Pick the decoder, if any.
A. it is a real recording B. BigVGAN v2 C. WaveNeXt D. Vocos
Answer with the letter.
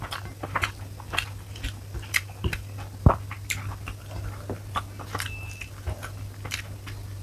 A